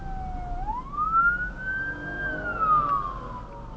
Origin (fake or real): real